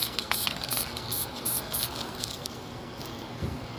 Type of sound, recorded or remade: remade